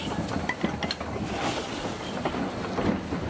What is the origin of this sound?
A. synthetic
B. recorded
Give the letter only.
B